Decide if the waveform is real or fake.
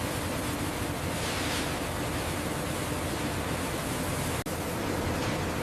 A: real